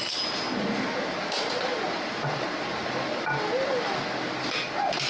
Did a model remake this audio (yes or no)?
no